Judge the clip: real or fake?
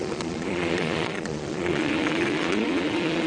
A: fake